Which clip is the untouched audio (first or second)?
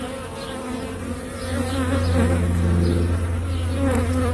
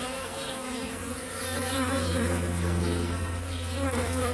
first